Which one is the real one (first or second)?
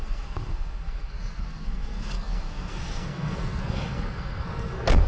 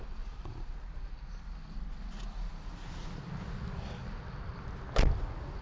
second